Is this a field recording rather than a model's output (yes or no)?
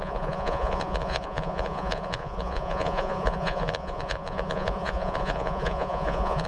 no